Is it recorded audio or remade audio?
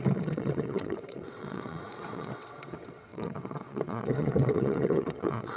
remade